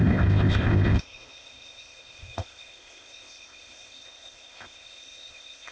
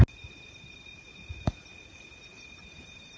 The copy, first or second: first